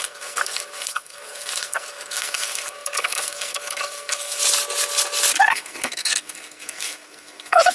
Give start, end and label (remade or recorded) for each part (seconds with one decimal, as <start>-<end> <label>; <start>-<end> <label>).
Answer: 0.0-4.4 remade; 4.4-5.4 recorded; 5.4-7.7 remade

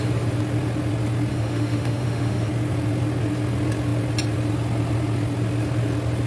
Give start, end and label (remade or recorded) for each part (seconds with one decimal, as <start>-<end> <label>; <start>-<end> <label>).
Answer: 0.0-1.3 recorded; 1.3-2.5 remade; 2.5-6.3 recorded

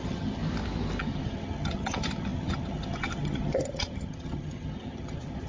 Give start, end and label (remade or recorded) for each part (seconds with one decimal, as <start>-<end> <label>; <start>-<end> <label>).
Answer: 0.0-0.4 remade; 0.4-1.0 recorded; 1.0-5.5 remade

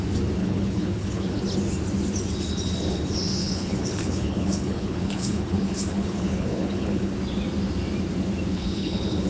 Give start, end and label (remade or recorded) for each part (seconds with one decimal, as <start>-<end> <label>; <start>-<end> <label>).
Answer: 0.0-0.4 recorded; 0.4-1.4 remade; 1.4-3.4 recorded; 3.4-7.1 remade; 7.1-8.5 recorded; 8.5-9.3 remade

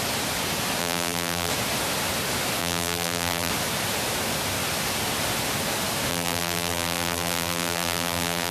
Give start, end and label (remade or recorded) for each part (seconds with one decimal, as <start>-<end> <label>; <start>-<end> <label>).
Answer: 0.0-0.8 recorded; 0.8-1.5 remade; 1.5-2.6 recorded; 2.6-3.5 remade; 3.5-6.1 recorded; 6.1-8.5 remade

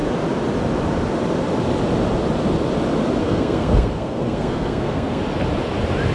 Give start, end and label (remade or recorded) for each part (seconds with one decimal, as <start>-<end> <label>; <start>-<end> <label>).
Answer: 0.0-3.2 recorded; 3.2-5.2 remade; 5.2-6.1 recorded

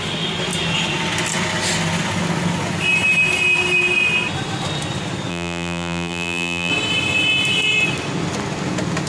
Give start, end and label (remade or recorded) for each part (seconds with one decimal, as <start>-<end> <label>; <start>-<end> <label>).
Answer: 0.0-5.3 recorded; 5.3-6.7 remade; 6.7-9.1 recorded